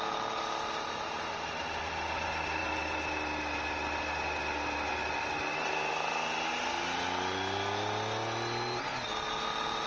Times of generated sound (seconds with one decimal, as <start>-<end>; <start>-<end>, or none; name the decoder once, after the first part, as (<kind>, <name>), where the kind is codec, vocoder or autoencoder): none